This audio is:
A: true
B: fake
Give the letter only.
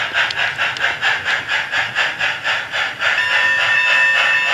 A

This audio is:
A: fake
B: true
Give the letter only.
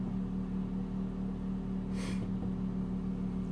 B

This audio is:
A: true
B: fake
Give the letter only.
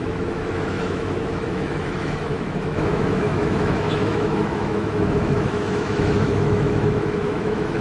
B